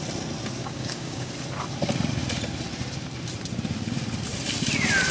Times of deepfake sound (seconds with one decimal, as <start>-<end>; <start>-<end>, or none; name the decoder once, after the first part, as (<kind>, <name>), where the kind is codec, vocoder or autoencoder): 0.6-1.3 (codec, DAC)